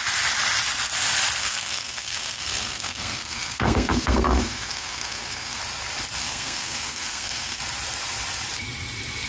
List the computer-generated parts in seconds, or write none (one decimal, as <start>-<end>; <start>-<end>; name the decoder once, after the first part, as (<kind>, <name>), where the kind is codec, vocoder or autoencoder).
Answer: 1.4-5.6 (codec, SNAC); 6.2-7.6